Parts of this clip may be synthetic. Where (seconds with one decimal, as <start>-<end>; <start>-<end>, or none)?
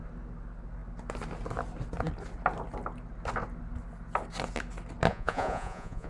5.1-6.1